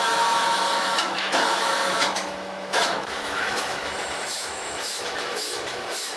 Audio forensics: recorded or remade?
remade